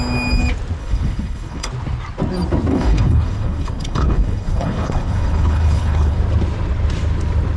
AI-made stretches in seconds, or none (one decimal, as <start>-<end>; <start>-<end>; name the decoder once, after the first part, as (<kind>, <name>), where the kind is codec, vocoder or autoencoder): 0.8-1.7 (codec, HILCodec); 2.7-6.2